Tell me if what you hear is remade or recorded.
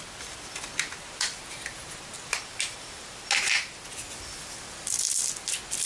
recorded